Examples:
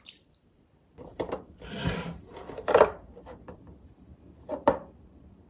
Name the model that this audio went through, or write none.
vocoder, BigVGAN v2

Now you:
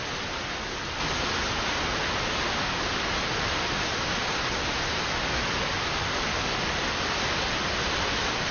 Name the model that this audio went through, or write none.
none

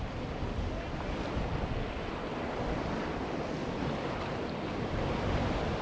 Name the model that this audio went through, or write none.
none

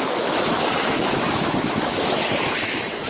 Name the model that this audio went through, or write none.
autoencoder, DAC-VAE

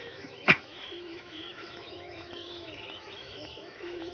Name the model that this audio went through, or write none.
autoencoder, DAC-VAE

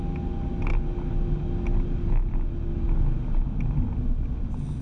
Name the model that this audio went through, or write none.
none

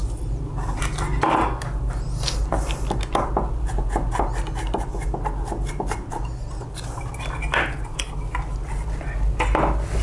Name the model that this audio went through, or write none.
none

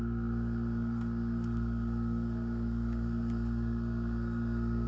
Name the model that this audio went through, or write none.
codec, SNAC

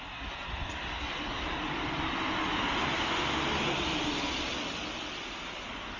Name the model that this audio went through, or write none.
none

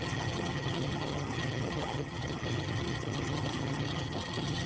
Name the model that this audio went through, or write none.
vocoder, HiFi-GAN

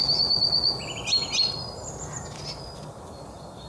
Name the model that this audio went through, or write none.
none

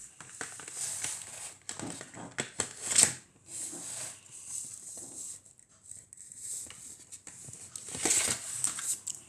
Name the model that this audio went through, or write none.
none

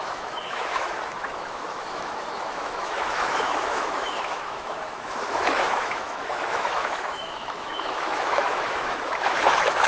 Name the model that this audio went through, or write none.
autoencoder, DAC-VAE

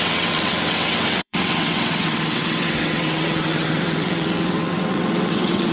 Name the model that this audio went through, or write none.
vocoder, WaveNeXt